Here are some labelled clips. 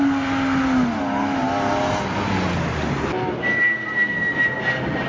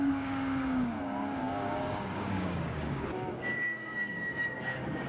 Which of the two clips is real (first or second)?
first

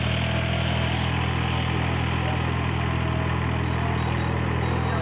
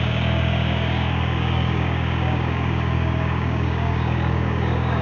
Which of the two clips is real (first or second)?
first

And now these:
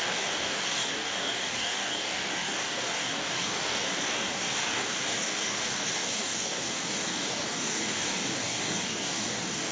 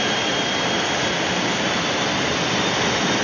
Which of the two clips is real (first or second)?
second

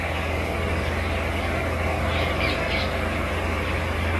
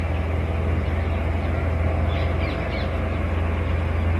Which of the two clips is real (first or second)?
second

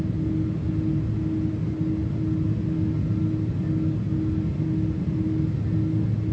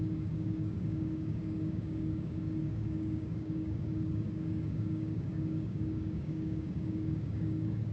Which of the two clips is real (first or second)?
first